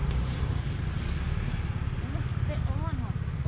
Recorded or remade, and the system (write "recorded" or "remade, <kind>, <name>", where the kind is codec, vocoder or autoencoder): recorded